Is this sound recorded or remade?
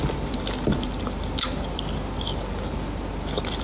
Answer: recorded